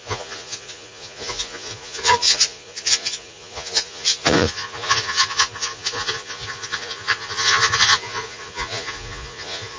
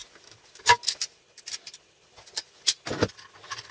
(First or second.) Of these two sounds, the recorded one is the second